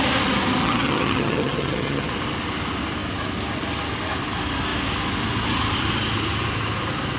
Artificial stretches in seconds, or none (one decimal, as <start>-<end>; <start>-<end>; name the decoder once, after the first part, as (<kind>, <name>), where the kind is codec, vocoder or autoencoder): 0.6-2.1 (vocoder, HiFi-GAN)